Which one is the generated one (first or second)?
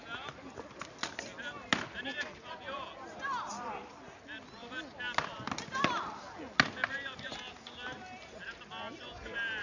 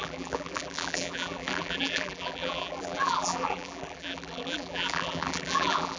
second